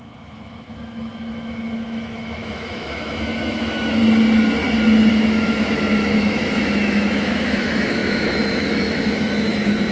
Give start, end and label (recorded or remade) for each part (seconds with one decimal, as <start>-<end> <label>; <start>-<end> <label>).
0.0-4.0 remade; 4.0-5.1 recorded; 5.1-9.9 remade

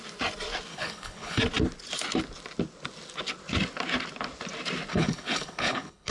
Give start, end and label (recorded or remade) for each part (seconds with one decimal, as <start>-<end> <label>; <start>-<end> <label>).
0.0-0.7 recorded; 0.7-1.4 remade; 1.4-4.9 recorded; 4.9-6.1 remade

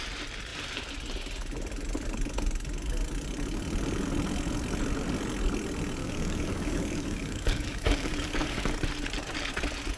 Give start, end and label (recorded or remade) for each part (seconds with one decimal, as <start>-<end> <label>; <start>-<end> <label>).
0.0-6.0 recorded; 6.0-8.7 remade; 8.7-10.0 recorded

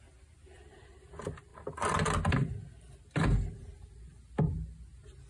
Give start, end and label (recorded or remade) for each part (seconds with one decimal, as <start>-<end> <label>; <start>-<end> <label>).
0.0-5.3 recorded

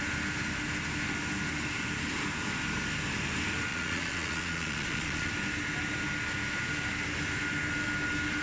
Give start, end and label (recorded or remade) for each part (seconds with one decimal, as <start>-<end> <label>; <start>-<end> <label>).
0.0-3.7 recorded; 3.7-5.3 remade; 5.3-8.4 recorded